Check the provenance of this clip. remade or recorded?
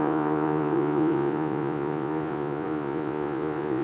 remade